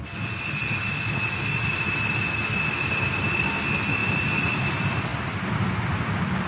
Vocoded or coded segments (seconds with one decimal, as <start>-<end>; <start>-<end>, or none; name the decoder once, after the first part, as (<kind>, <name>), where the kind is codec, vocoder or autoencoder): none